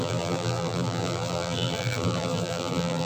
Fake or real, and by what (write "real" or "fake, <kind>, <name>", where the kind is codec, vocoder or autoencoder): fake, vocoder, BigVGAN v2